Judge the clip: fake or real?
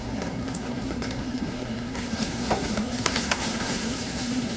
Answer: fake